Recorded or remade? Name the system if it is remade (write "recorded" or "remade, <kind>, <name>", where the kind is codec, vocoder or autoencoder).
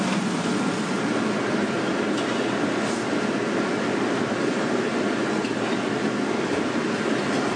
recorded